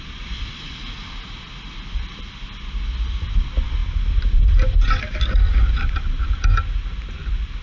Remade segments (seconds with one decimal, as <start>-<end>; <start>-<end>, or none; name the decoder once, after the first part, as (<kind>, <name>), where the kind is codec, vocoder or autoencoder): none